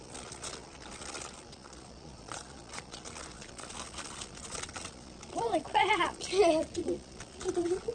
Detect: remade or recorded remade